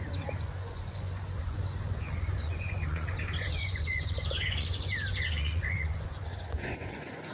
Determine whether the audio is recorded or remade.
remade